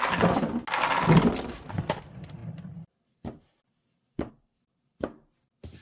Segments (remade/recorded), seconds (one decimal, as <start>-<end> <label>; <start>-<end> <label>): 0.0-5.8 recorded